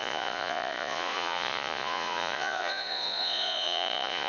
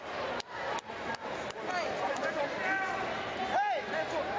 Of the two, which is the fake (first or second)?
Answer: first